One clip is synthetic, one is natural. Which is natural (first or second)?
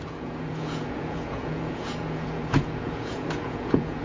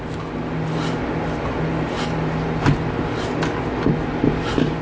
second